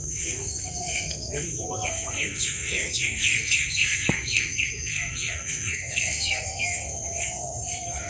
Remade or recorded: remade